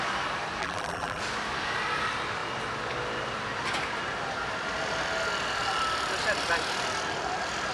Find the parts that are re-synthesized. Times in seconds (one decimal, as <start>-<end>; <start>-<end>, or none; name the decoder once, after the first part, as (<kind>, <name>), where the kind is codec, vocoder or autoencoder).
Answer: 0.6-1.2 (vocoder, BigVGAN v2)